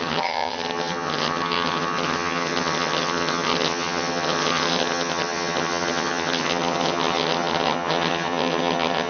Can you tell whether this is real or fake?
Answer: fake